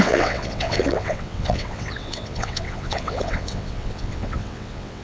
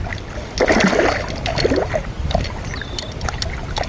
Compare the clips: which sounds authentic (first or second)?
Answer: second